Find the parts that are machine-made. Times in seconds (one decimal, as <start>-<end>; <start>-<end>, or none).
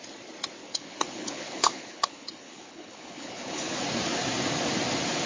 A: 0.6-3.8